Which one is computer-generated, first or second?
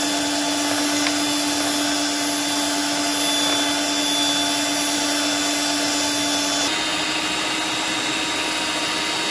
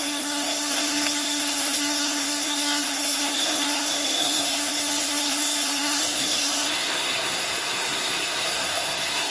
second